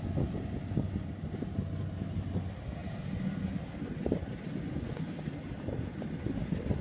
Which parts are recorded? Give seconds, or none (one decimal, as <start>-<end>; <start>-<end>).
0.0-6.8